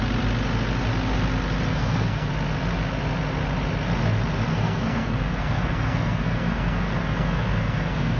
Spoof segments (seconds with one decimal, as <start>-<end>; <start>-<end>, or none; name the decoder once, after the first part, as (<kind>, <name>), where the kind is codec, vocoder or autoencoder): 1.7-2.3 (codec, SNAC); 4.5-8.2